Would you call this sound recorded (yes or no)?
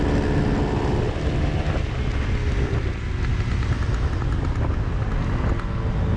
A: yes